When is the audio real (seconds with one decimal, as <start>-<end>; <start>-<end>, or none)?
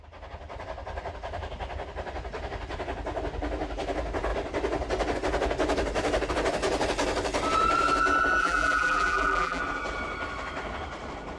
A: 0.0-8.4; 9.6-11.4